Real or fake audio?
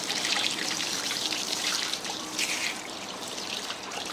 fake